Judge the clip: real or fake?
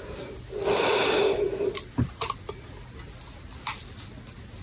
real